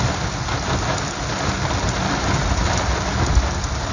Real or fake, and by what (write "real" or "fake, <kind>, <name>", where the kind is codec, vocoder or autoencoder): real